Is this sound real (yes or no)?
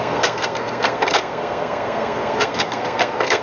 no